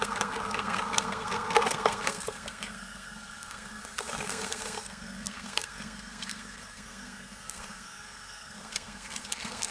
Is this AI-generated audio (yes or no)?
yes